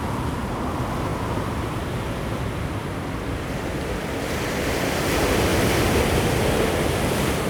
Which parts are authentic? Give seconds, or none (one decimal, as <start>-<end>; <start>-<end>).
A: 0.0-5.5; 6.0-7.5